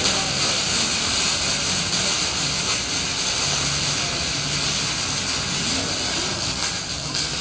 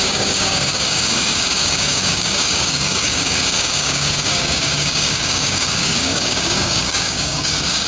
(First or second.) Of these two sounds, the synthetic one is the second